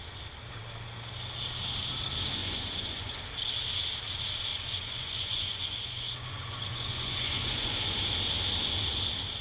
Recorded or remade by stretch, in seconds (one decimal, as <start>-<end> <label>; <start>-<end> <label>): 0.0-2.4 recorded; 2.4-3.2 remade; 3.2-4.5 recorded; 4.5-8.0 remade; 8.0-9.4 recorded